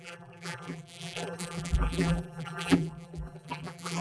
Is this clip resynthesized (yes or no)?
yes